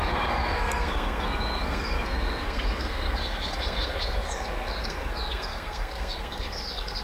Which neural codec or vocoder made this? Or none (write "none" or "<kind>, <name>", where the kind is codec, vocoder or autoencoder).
codec, SNAC